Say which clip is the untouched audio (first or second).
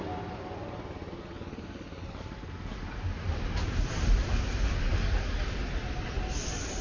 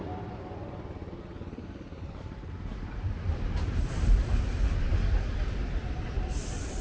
first